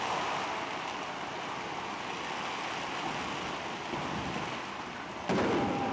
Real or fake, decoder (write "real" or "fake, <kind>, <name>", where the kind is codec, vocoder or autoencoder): real